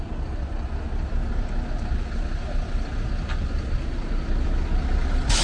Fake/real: real